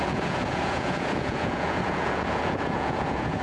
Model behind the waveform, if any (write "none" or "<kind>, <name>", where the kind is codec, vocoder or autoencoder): vocoder, Vocos